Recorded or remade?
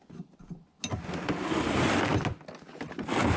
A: recorded